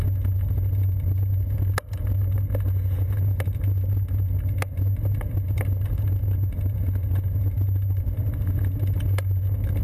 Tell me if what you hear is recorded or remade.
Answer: recorded